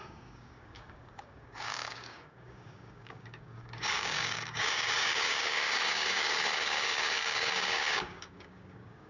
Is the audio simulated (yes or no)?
yes